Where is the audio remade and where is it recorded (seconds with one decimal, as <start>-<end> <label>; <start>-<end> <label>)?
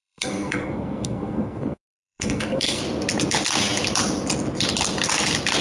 0.0-2.8 remade; 2.8-5.6 recorded